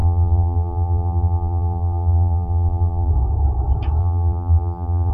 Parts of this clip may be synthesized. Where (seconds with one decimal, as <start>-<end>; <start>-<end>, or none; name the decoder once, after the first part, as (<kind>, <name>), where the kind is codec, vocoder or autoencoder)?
0.0-3.1 (vocoder, BigVGAN v2); 4.0-5.1